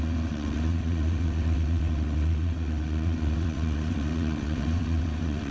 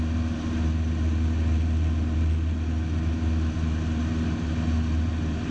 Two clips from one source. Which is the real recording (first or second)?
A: second